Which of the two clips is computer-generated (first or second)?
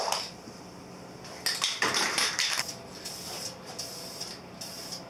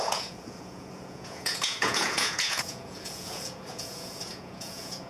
second